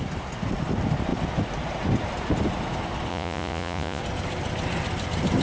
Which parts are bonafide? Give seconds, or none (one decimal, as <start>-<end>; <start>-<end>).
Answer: 0.0-3.1; 4.0-5.4

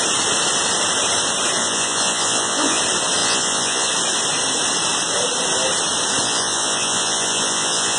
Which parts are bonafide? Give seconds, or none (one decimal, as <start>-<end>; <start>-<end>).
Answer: 0.0-1.6; 2.8-3.2; 3.9-6.2

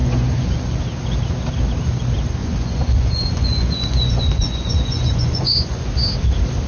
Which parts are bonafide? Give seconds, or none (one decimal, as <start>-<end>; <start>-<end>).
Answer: 0.8-2.4; 5.9-6.7

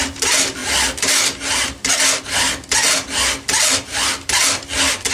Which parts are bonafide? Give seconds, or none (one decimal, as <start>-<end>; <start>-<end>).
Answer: 0.0-5.1

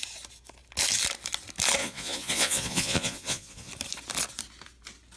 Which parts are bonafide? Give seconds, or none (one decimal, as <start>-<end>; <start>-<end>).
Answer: 0.0-1.8; 3.7-5.2

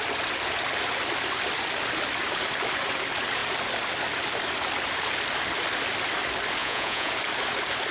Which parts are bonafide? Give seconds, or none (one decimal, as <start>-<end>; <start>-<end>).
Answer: 0.0-6.6; 7.1-7.9

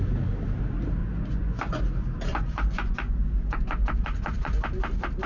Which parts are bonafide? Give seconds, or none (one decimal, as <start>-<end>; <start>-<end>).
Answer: 0.0-1.0; 1.8-2.3; 4.6-5.3

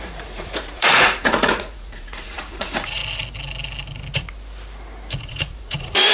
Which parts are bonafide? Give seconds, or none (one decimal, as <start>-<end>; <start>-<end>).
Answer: 3.0-5.2